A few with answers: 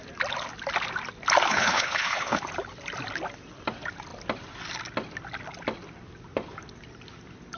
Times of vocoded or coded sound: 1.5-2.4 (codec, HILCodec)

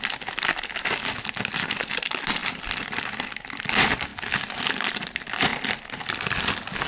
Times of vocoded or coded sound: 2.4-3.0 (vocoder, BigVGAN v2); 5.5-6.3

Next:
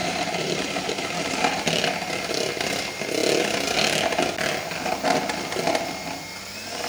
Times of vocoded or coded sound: 0.0-1.6 (vocoder, BigVGAN v2)

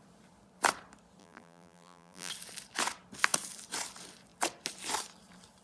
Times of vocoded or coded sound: 1.2-2.3 (vocoder, BigVGAN v2)

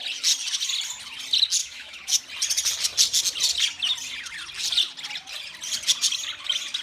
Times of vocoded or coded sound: 1.6-2.2 (autoencoder, DAC-VAE)

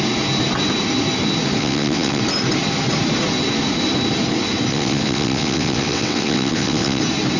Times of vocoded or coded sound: 1.6-2.2 (vocoder, WaveNeXt); 4.7-7.0

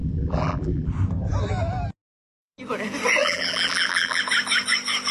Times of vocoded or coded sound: 0.0-0.9 (vocoder, BigVGAN v2); 3.2-4.2

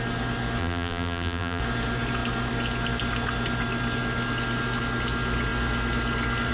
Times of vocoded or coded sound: 0.6-1.6 (vocoder, BigVGAN v2)